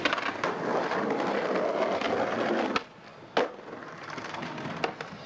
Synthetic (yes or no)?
no